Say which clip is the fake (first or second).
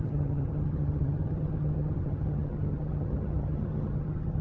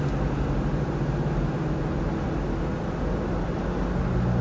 first